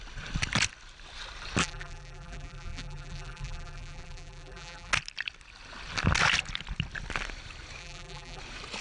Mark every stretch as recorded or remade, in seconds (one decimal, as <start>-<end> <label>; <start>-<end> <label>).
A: 0.0-1.6 recorded; 1.6-4.9 remade; 4.9-7.8 recorded; 7.8-8.4 remade; 8.4-8.8 recorded